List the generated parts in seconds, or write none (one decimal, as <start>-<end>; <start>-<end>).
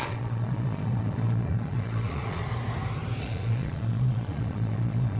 0.0-2.4; 3.2-5.2